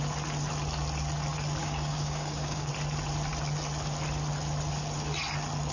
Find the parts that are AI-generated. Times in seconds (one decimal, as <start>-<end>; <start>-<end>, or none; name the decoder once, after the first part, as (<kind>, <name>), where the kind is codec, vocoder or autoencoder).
1.6-2.7 (codec, DAC)